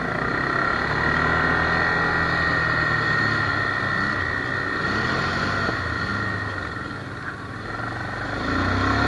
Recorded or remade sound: recorded